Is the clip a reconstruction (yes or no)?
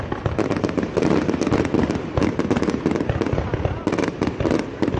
no